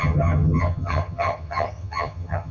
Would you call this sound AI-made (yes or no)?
yes